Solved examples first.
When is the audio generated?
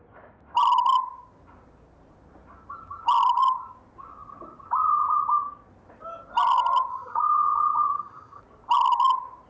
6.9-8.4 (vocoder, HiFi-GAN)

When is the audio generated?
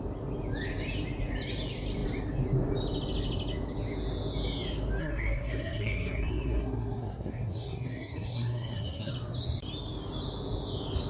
5.0-9.1 (codec, SNAC)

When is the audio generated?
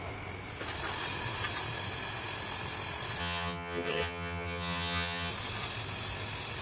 3.2-5.3 (vocoder, HiFi-GAN)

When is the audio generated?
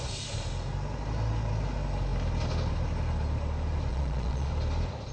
3.9-4.5 (vocoder, Vocos)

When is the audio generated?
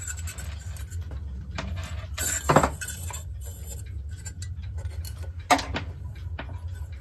none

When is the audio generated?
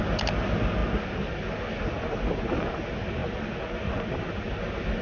none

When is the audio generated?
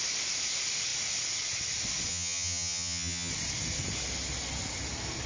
2.1-3.3 (vocoder, HiFi-GAN)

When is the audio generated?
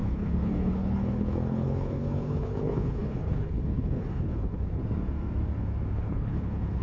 0.0-4.8 (codec, HILCodec); 5.9-6.8